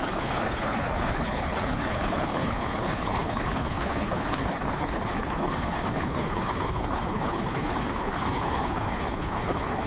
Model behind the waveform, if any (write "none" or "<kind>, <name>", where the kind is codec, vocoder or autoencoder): codec, HILCodec